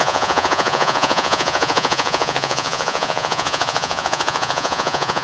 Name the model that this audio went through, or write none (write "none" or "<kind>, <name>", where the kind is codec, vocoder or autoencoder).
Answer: vocoder, Vocos